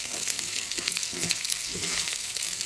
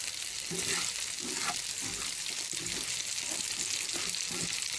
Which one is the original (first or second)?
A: second